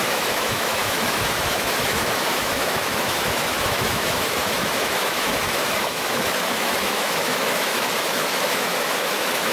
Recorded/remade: remade